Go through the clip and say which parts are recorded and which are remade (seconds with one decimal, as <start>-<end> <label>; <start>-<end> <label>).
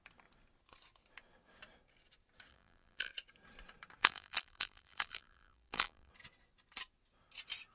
0.0-2.5 recorded; 2.5-3.1 remade; 3.1-4.0 recorded; 4.0-6.1 remade; 6.1-7.7 recorded